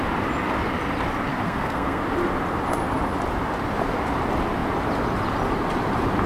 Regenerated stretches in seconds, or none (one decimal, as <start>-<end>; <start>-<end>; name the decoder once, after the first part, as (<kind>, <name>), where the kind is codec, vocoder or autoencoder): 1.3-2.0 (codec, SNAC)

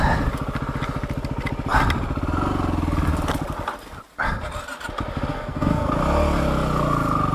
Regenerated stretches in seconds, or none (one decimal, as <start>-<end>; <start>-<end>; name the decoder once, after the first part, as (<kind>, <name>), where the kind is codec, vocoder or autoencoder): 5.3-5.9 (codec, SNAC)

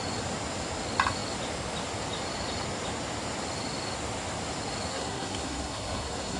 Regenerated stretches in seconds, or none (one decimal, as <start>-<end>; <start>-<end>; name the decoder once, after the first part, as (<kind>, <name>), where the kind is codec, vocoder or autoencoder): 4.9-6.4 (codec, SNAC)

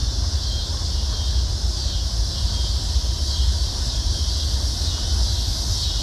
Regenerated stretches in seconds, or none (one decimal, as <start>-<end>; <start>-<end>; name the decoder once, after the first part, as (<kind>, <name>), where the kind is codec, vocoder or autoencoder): none

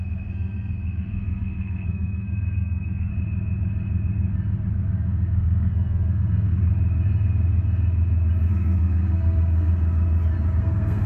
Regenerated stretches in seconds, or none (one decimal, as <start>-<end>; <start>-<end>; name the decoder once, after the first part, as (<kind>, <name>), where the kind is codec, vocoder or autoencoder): 0.0-3.1 (codec, SNAC); 4.7-6.7; 8.5-9.7; 10.6-11.1